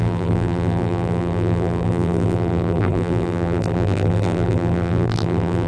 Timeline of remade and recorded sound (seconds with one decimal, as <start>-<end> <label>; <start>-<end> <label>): 0.0-5.7 remade